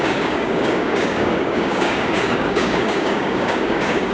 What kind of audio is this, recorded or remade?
remade